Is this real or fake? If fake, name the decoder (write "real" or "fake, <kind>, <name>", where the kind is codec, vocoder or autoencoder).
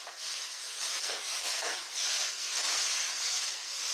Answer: fake, codec, SNAC